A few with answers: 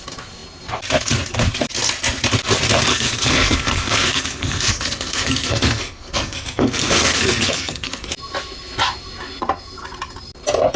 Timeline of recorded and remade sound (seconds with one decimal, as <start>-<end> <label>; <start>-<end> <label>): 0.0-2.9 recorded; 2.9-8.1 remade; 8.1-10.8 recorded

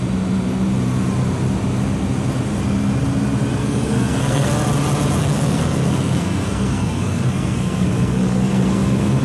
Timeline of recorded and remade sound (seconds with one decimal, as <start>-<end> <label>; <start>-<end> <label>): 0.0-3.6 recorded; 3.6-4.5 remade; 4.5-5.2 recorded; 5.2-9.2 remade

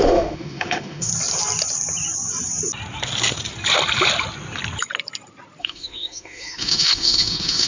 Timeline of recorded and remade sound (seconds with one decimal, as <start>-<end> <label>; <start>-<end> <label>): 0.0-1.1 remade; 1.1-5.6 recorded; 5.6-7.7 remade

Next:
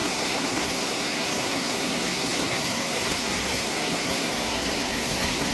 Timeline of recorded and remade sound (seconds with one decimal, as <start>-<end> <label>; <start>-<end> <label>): 0.0-5.5 remade

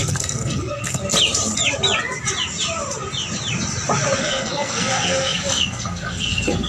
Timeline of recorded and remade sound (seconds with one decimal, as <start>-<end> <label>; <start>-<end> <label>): 0.0-1.0 remade; 1.0-4.2 recorded; 4.2-6.7 remade